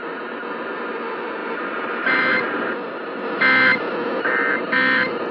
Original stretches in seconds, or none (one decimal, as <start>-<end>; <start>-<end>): 0.0-5.3